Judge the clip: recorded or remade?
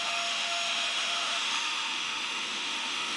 remade